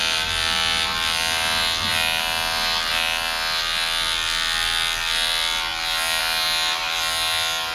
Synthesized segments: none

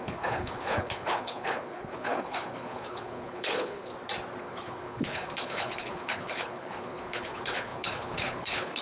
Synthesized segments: 0.0-3.9 (codec, HILCodec); 4.4-8.8

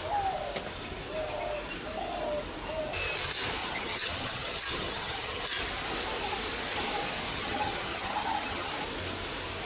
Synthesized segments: 3.6-5.4 (vocoder, HiFi-GAN); 7.3-8.7

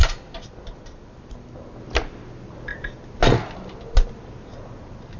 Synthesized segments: none

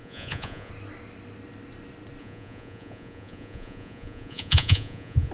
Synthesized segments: 0.0-0.7 (vocoder, Vocos); 2.2-5.3

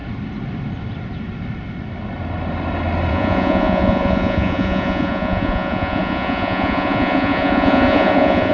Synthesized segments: 3.1-8.5 (vocoder, Vocos)